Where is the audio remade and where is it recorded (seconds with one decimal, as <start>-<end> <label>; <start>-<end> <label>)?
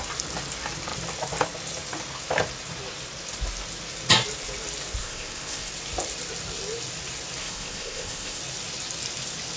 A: 0.0-5.0 recorded; 5.0-5.7 remade; 5.7-7.4 recorded; 7.4-8.4 remade; 8.4-9.6 recorded